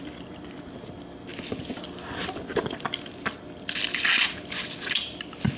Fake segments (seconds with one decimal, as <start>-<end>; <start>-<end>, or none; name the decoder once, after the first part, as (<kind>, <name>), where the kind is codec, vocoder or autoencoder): none